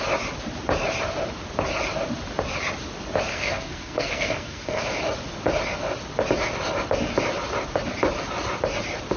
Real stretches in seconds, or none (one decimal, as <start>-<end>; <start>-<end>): 0.0-3.3; 4.8-9.2